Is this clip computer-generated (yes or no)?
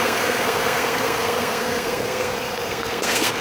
yes